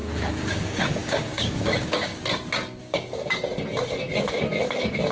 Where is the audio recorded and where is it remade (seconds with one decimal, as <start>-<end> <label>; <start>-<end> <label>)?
0.0-0.5 recorded; 0.5-2.1 remade; 2.1-2.8 recorded; 2.8-3.5 remade; 3.5-5.1 recorded